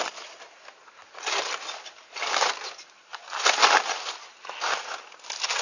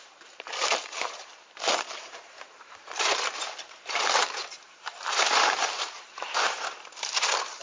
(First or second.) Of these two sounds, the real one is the first